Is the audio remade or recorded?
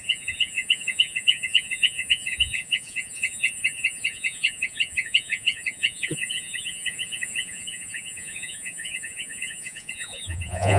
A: remade